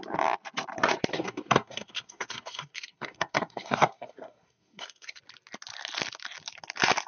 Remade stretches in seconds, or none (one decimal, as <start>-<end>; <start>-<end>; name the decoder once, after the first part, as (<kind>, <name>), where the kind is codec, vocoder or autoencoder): 1.1-5.2 (codec, SNAC)